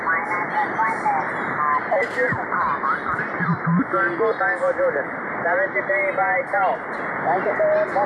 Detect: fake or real real